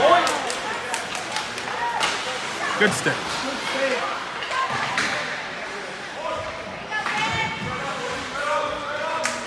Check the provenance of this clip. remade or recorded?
recorded